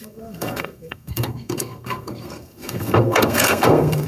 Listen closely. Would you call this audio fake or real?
fake